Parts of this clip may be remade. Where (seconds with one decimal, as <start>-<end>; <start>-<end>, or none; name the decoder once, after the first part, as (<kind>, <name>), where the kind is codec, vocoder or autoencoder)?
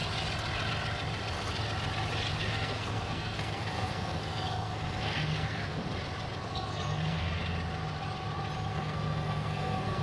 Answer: 2.4-5.8 (codec, SNAC); 6.5-7.4; 8.7-10.0